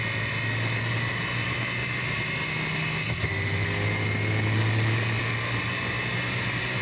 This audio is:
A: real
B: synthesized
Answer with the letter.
A